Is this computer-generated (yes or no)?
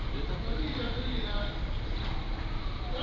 no